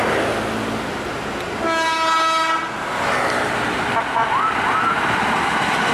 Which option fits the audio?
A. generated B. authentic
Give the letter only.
B